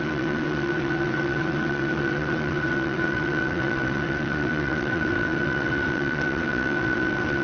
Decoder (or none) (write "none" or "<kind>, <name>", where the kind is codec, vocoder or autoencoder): vocoder, WaveNeXt